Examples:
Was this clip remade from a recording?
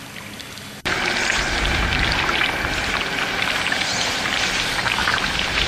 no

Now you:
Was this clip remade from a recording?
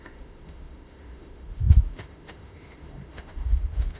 yes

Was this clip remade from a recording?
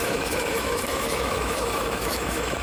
yes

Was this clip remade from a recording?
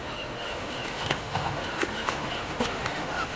yes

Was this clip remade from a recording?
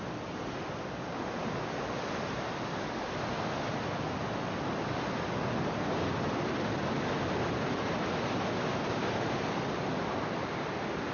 no